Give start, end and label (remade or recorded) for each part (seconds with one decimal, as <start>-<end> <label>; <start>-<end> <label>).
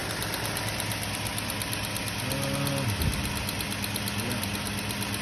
0.0-5.2 recorded